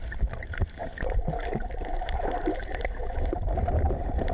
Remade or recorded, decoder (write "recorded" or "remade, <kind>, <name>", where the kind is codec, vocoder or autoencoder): remade, vocoder, BigVGAN v2